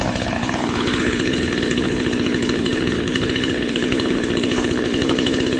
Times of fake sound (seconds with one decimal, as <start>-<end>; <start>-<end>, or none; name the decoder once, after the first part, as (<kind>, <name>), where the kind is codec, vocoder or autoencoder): 0.0-5.6 (codec, HILCodec)